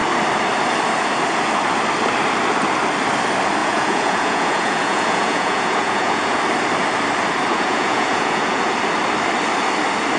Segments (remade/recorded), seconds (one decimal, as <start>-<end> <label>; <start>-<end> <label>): 0.0-3.6 recorded; 3.6-6.4 remade; 6.4-7.5 recorded; 7.5-8.7 remade; 8.7-10.2 recorded